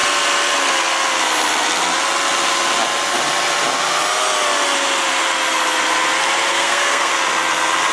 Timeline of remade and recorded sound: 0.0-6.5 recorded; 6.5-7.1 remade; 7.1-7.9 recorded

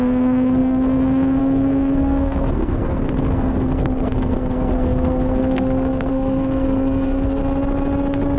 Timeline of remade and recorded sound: 0.0-7.4 remade; 7.4-8.4 recorded